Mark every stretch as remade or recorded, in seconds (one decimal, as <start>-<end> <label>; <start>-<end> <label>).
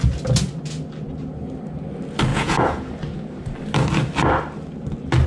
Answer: 0.0-2.3 recorded; 2.3-2.9 remade; 2.9-5.3 recorded